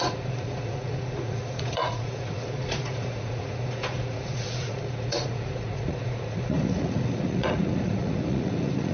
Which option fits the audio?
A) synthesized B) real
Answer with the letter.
A